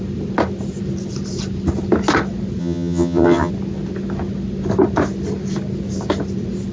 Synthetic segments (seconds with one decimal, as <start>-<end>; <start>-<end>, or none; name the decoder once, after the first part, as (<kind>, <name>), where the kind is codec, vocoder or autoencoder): 2.6-3.5 (vocoder, HiFi-GAN)